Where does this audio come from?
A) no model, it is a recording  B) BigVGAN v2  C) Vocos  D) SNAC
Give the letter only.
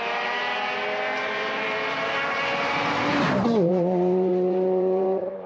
B